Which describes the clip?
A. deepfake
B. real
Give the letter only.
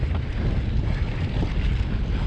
B